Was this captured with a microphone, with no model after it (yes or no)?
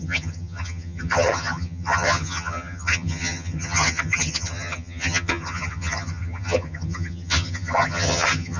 no